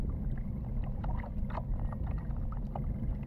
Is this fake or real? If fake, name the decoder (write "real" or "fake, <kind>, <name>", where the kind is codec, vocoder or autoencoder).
real